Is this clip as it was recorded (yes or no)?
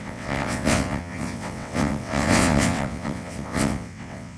no